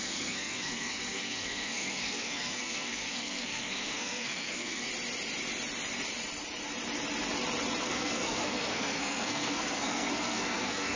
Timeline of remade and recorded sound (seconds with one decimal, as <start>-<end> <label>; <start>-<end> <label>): 0.0-4.9 remade; 4.9-7.8 recorded; 7.8-11.0 remade